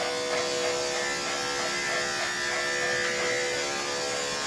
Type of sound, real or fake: real